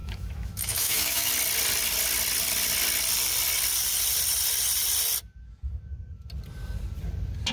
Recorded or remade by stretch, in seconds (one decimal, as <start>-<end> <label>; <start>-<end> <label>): 0.0-1.3 remade; 1.3-7.5 recorded